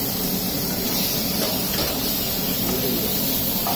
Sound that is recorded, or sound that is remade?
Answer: recorded